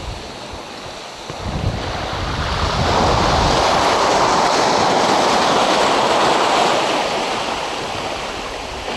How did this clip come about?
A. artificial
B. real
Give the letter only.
B